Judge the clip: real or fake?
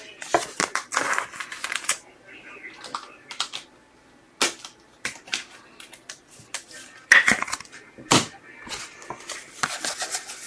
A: real